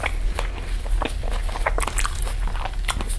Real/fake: real